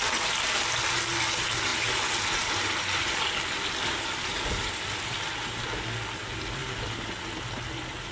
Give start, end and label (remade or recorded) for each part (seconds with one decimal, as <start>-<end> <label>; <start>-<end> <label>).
0.0-8.1 recorded